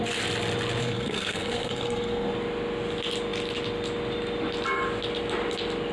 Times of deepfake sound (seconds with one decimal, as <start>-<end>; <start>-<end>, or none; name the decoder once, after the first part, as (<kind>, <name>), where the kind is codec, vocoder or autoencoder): 0.8-2.3 (codec, SNAC)